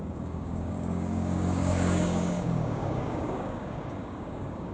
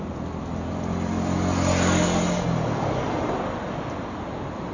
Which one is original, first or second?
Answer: second